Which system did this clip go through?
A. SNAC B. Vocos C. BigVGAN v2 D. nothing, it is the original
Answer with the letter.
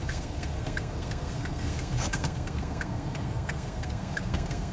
A